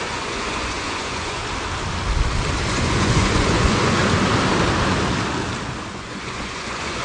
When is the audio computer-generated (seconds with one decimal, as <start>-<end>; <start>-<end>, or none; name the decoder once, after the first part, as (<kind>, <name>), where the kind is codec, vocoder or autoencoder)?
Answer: 0.0-1.4 (vocoder, Vocos); 2.7-4.0; 5.9-7.0